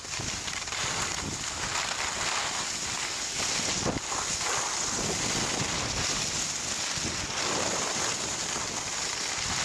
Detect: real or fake real